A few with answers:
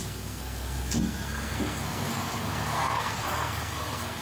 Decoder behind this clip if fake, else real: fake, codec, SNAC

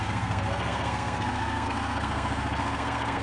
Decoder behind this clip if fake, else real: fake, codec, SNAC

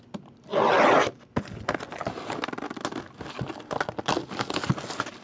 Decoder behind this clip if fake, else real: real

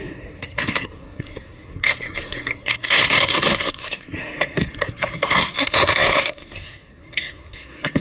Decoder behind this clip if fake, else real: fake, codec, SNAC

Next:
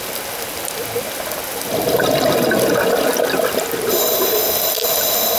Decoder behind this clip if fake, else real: real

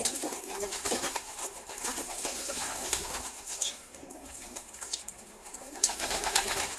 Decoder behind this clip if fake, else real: fake, codec, SNAC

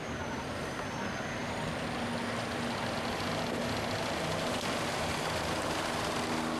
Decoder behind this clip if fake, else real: real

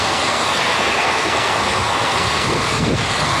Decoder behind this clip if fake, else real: fake, codec, SNAC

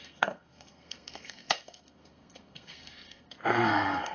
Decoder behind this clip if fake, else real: fake, codec, SNAC